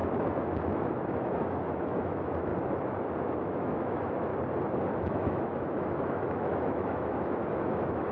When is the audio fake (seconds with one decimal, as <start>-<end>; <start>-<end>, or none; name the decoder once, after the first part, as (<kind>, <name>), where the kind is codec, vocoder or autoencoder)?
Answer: 0.5-2.5 (autoencoder, DAC-VAE); 3.2-4.3; 5.0-8.1